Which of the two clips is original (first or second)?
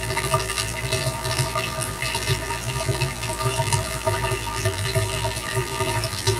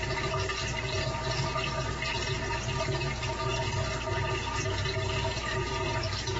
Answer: second